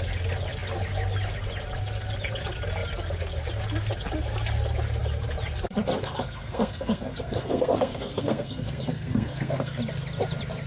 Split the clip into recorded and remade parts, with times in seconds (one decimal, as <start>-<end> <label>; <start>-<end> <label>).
0.0-6.0 recorded; 6.0-9.8 remade; 9.8-10.7 recorded